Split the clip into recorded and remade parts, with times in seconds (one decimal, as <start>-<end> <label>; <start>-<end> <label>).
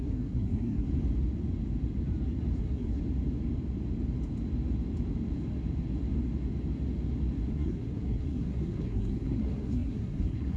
0.0-0.9 remade; 0.9-2.6 recorded; 2.6-3.0 remade; 3.0-7.5 recorded; 7.5-10.6 remade